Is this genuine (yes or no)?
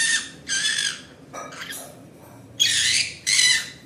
no